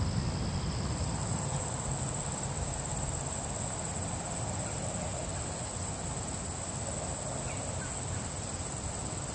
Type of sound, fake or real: real